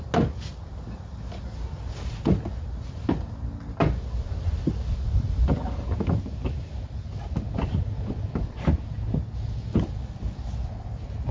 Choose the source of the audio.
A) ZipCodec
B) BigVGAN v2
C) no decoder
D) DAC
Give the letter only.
C